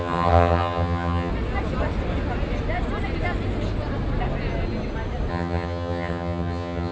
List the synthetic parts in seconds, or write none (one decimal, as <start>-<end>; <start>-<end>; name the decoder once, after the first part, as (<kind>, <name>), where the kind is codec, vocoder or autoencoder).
0.0-1.3 (vocoder, HiFi-GAN); 5.3-6.9